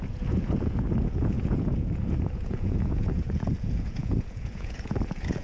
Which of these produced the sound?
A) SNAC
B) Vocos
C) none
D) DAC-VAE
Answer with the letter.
B